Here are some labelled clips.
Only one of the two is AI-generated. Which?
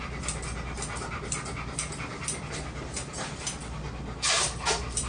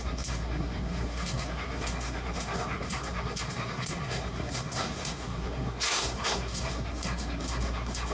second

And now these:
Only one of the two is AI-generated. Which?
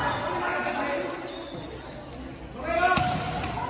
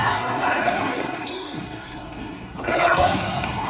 second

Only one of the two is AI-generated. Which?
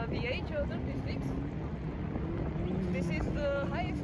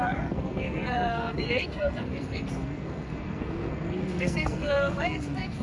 second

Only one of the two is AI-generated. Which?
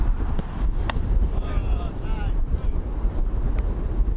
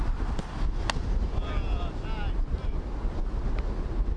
first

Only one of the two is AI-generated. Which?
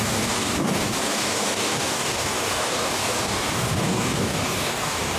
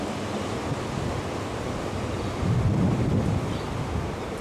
first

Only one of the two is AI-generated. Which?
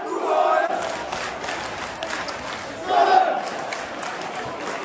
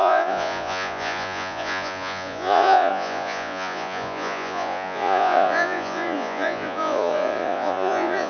second